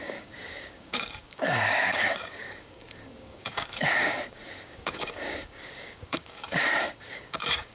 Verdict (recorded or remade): remade